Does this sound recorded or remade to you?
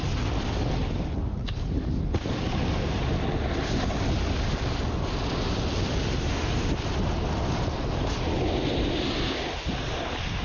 recorded